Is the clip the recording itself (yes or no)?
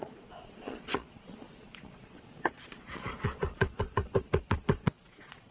no